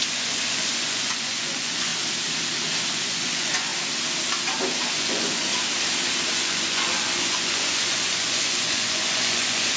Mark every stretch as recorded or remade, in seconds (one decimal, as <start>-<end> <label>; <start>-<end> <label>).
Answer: 0.0-1.9 remade; 1.9-2.9 recorded; 2.9-3.7 remade; 3.7-4.9 recorded; 4.9-5.5 remade; 5.5-6.3 recorded; 6.3-9.8 remade